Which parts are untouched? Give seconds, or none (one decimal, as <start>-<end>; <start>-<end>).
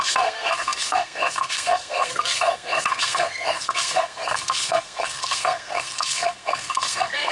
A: none